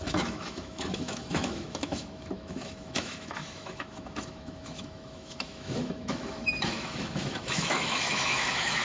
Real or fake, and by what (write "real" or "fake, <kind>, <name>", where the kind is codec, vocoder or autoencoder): fake, autoencoder, DAC-VAE